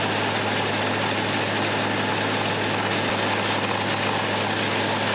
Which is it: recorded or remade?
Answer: recorded